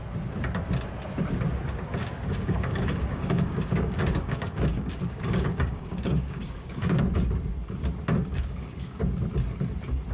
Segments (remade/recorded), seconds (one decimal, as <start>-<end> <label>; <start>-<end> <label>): 0.0-2.0 recorded; 2.0-7.0 remade; 7.0-8.3 recorded; 8.3-9.0 remade; 9.0-10.1 recorded